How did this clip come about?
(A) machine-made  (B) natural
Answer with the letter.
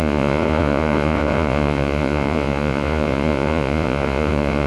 A